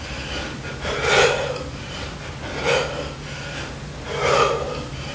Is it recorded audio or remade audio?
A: recorded